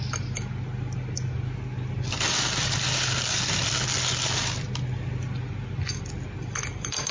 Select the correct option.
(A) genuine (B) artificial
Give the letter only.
A